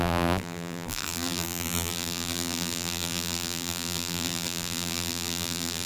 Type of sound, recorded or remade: remade